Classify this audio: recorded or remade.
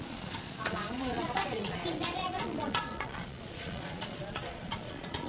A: remade